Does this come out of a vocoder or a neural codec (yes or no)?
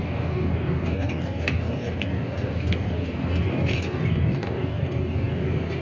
yes